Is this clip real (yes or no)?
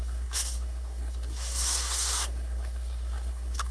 no